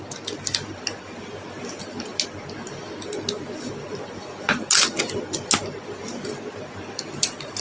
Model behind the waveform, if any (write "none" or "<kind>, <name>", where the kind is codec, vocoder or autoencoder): none